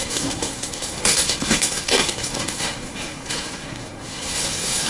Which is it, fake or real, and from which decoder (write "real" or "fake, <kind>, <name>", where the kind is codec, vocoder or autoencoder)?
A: fake, codec, SNAC